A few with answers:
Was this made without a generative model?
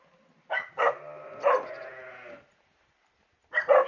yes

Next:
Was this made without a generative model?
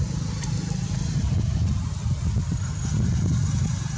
yes